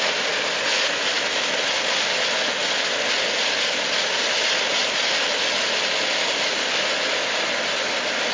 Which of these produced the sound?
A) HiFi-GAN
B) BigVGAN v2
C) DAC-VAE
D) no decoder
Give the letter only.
D